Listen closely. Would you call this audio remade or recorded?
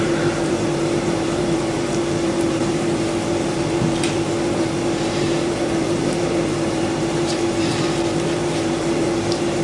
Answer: remade